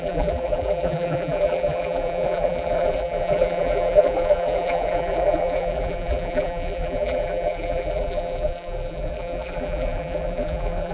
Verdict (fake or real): fake